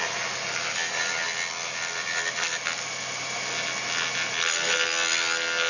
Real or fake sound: real